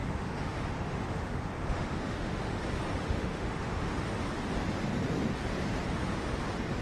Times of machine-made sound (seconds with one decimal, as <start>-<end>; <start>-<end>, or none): 0.0-2.6; 3.0-4.0

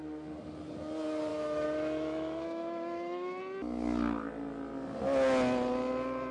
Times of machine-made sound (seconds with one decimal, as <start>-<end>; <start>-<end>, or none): 1.3-3.4

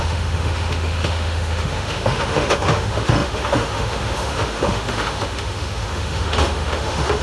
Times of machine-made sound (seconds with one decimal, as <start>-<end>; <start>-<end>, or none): 0.0-7.2

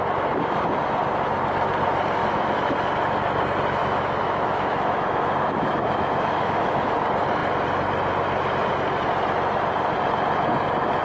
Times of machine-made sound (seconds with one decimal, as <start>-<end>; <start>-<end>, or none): 2.2-2.7; 3.8-6.9

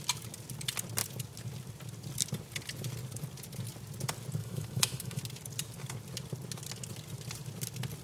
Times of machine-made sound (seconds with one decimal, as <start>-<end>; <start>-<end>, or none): 4.4-5.2

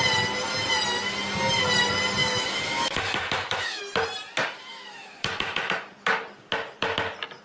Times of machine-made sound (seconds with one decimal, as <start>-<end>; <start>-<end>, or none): 2.2-3.8; 4.7-5.3

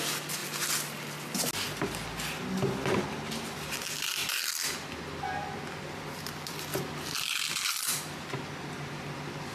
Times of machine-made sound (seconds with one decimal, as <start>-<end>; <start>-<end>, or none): none

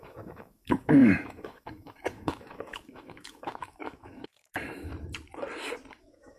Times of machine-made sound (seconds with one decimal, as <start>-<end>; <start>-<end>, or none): 0.0-4.9; 6.0-6.4